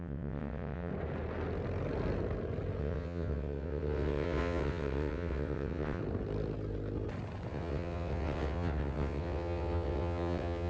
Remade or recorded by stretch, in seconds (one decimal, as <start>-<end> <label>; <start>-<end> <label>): 0.0-0.9 remade; 0.9-2.8 recorded; 2.8-6.0 remade; 6.0-7.5 recorded; 7.5-10.7 remade